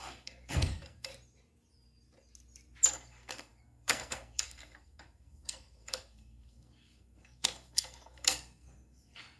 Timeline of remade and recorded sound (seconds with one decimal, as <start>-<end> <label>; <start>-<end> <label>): 0.0-1.1 remade; 1.1-2.9 recorded; 2.9-9.4 remade

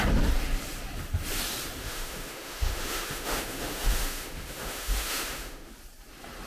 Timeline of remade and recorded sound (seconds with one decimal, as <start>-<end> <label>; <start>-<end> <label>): 0.0-1.8 recorded; 1.8-5.7 remade; 5.7-6.5 recorded

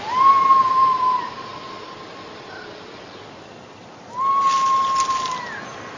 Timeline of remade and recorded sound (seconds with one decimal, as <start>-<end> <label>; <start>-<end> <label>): 0.0-6.0 recorded

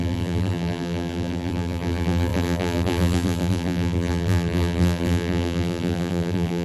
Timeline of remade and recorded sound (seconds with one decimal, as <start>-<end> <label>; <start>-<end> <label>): 0.0-6.6 remade

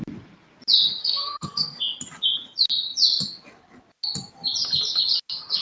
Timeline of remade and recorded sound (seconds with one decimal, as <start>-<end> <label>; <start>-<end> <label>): 0.0-1.0 recorded; 1.0-1.8 remade; 1.8-5.6 recorded

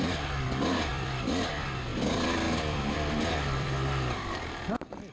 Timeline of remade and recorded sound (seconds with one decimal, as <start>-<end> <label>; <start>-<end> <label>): 0.0-0.9 recorded; 0.9-1.5 remade; 1.5-1.9 recorded; 1.9-4.6 remade; 4.6-5.1 recorded